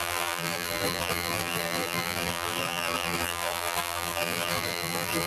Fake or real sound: fake